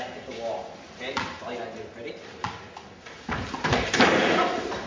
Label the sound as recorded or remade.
recorded